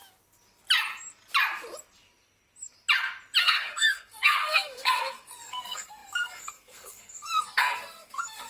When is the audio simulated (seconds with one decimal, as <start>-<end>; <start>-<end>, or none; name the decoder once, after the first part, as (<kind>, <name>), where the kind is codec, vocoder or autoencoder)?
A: 3.4-8.5 (codec, SNAC)